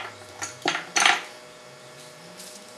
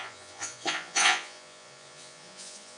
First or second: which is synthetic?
second